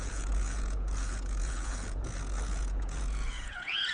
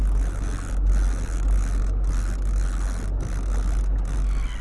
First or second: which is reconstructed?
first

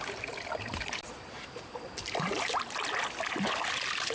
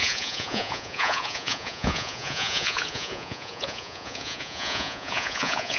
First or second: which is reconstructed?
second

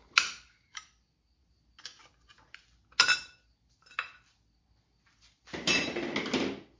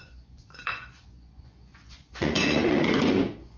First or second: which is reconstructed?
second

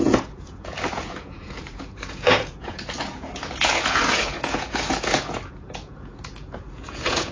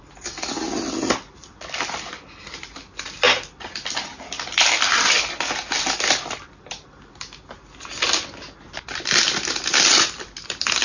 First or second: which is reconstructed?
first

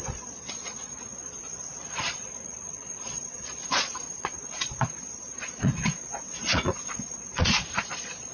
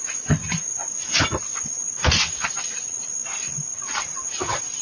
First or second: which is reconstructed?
first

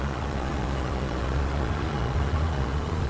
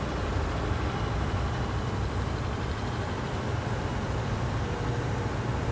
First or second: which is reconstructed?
first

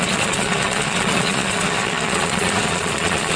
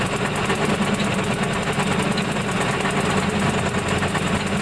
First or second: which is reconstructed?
first